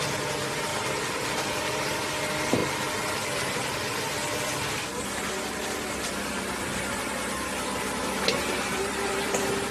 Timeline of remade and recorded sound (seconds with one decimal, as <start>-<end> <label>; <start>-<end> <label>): 0.0-0.7 recorded; 0.7-2.2 remade; 2.2-9.7 recorded